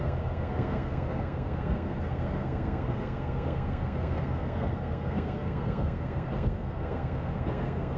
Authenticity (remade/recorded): remade